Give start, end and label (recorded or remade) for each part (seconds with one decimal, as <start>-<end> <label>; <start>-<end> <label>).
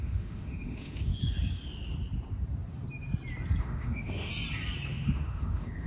0.0-1.1 remade; 1.1-3.6 recorded; 3.6-4.3 remade; 4.3-4.9 recorded; 4.9-5.9 remade